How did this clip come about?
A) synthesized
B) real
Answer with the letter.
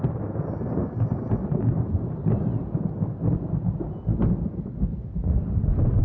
B